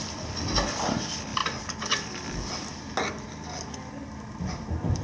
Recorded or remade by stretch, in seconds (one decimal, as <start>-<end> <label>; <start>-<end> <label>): 0.0-5.0 recorded